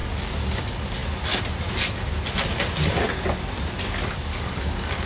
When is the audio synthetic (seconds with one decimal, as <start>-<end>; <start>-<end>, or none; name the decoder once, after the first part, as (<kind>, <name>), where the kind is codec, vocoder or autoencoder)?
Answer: 0.0-1.0 (codec, DAC); 4.1-5.1